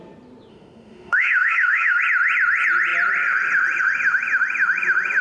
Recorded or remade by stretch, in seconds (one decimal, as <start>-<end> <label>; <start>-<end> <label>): 0.0-0.5 recorded; 0.5-2.0 remade; 2.0-5.2 recorded